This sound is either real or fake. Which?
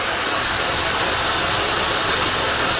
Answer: real